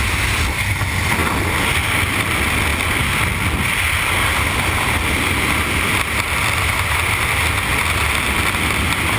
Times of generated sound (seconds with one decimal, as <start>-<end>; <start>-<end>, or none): none